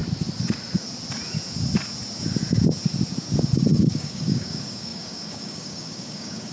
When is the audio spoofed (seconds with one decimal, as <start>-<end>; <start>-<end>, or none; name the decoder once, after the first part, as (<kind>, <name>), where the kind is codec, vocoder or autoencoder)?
3.8-6.5 (codec, DAC)